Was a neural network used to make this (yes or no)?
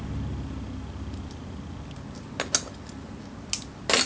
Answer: no